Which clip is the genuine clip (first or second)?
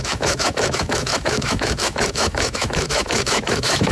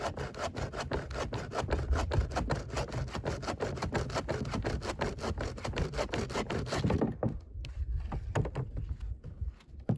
second